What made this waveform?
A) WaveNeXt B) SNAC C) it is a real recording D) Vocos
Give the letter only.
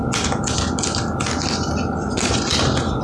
C